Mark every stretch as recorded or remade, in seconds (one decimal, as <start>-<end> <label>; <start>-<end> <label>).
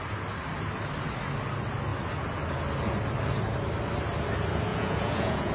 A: 0.0-4.7 recorded; 4.7-5.5 remade